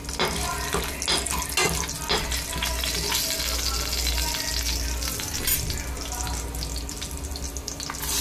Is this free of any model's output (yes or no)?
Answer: yes